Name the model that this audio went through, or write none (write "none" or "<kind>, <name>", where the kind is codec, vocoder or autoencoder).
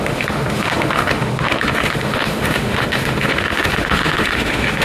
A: autoencoder, DAC-VAE